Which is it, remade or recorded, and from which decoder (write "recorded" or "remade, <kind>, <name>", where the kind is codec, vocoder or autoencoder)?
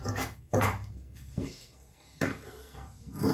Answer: remade, codec, SNAC